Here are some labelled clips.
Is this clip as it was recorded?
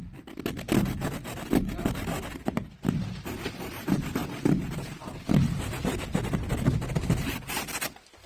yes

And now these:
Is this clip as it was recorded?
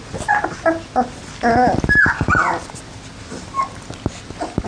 yes